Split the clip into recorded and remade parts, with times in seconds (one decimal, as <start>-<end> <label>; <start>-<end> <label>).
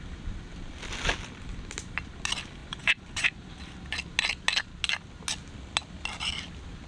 0.0-2.6 recorded; 2.6-3.5 remade; 3.5-6.9 recorded